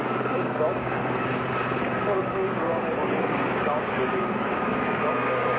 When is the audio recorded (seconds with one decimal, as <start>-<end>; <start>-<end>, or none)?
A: 1.0-2.2